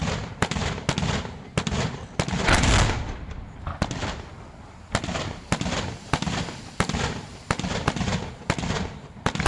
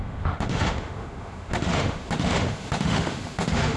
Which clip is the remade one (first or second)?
second